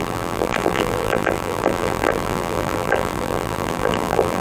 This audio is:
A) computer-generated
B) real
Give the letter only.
A